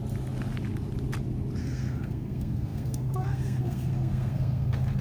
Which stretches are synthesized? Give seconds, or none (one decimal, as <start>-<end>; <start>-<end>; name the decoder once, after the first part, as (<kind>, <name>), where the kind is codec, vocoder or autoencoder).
1.6-5.0 (codec, SNAC)